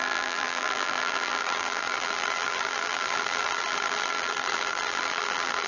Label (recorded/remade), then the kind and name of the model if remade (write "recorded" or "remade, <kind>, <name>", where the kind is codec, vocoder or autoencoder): remade, vocoder, BigVGAN v2